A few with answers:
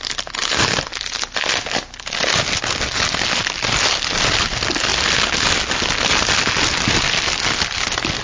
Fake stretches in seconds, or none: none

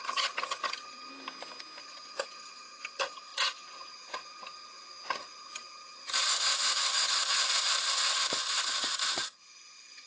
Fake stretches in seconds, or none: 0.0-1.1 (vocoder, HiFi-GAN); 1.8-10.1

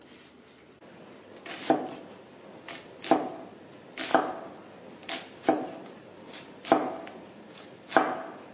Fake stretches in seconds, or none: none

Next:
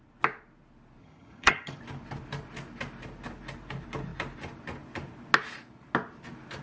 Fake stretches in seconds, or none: 1.0-1.8 (vocoder, HiFi-GAN)